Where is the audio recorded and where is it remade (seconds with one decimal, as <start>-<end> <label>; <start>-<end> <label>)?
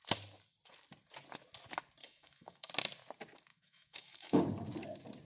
0.0-2.0 recorded; 2.0-2.7 remade; 2.7-3.5 recorded; 3.5-4.4 remade; 4.4-5.2 recorded